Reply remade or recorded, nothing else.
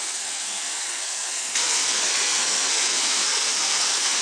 remade